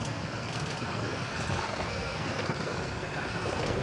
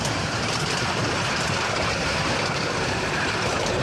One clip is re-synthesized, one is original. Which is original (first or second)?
second